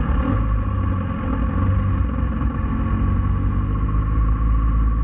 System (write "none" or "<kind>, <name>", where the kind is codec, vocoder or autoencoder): none